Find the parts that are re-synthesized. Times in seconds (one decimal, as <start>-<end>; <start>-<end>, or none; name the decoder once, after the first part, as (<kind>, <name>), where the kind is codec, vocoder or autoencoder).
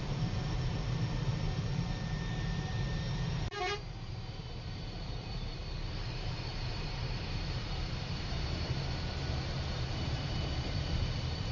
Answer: 0.0-5.6 (vocoder, BigVGAN v2); 6.1-11.5